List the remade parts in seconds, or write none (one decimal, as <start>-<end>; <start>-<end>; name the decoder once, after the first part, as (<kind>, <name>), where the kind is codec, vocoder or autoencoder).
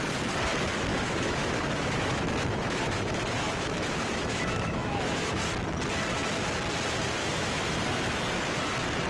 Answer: 0.9-5.5 (autoencoder, DAC-VAE); 7.2-7.7